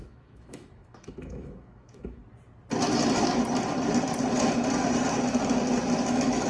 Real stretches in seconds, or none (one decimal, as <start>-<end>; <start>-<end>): 2.2-6.1